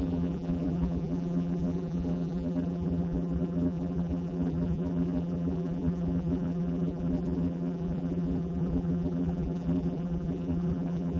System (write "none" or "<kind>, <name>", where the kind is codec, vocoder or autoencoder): vocoder, BigVGAN v2